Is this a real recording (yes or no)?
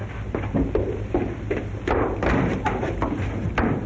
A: yes